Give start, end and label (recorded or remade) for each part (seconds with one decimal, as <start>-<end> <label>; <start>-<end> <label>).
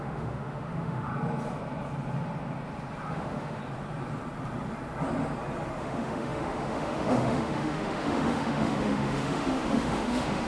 0.0-1.1 remade; 1.1-3.1 recorded; 3.1-3.6 remade; 3.6-5.8 recorded; 5.8-10.5 remade